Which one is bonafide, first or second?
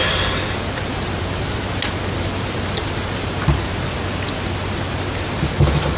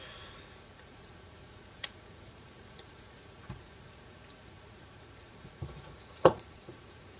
first